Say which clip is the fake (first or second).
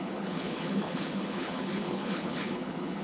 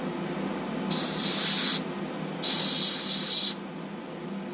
first